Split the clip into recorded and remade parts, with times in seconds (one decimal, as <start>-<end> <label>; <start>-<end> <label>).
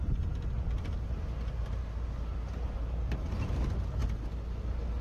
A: 0.0-5.0 recorded